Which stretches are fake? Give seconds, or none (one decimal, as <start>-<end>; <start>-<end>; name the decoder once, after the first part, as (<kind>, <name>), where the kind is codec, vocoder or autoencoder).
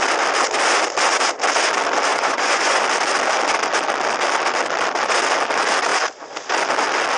2.1-2.8 (vocoder, Vocos)